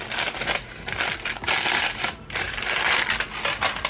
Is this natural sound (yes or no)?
yes